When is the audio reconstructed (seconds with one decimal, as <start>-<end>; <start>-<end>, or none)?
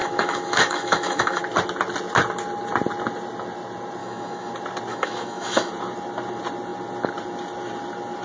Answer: 0.0-1.4; 4.0-4.5; 4.9-5.7